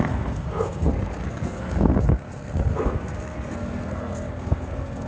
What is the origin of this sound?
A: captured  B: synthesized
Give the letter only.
B